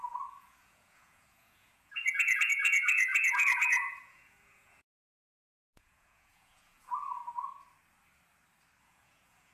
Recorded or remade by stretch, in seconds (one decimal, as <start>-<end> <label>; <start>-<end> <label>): 0.0-7.2 remade; 7.2-8.8 recorded; 8.8-9.5 remade